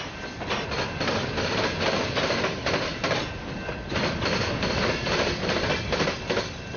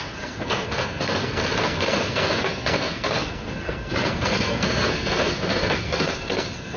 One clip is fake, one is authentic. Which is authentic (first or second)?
first